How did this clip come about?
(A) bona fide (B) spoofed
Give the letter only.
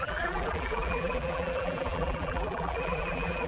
B